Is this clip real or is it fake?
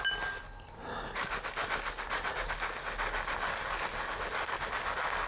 real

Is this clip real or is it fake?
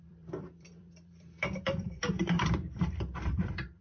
fake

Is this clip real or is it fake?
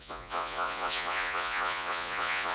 fake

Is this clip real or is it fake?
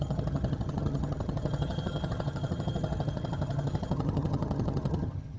fake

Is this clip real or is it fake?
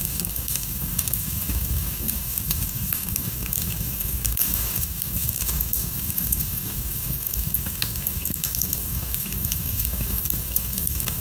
fake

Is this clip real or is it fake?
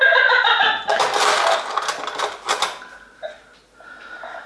real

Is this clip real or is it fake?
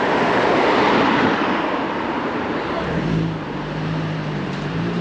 fake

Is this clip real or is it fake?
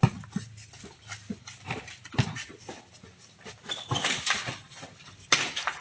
real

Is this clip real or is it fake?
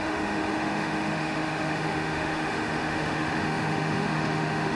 fake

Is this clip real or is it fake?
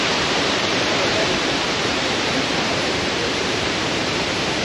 fake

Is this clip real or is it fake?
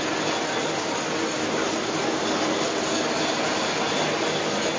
real